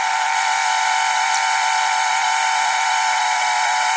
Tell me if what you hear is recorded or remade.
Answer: recorded